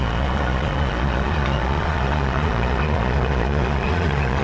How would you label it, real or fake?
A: fake